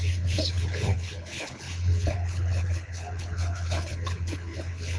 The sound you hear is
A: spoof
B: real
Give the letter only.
A